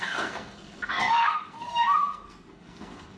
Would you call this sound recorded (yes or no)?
no